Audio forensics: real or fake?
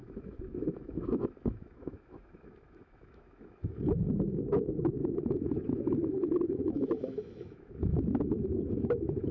fake